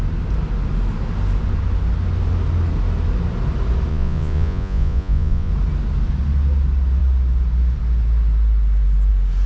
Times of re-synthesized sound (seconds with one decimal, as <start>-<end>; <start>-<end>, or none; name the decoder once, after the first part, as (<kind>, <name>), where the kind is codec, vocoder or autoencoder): 3.9-5.5 (vocoder, Vocos)